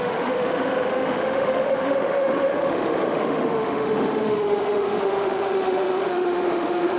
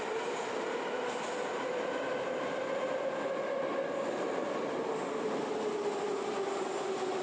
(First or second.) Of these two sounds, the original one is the second